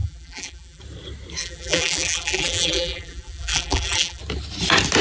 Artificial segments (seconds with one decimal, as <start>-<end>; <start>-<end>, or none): 0.0-0.8; 1.4-4.2